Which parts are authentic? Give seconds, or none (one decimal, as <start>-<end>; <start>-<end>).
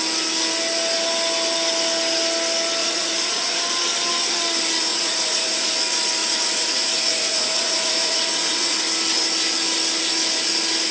0.0-2.8; 3.6-4.9; 5.7-6.2; 8.8-10.9